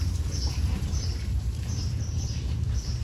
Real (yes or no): no